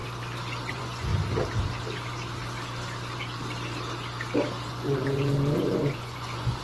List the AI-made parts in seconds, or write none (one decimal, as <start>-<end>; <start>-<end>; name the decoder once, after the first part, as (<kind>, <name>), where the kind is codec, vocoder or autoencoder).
0.7-1.1 (vocoder, Vocos); 4.7-6.6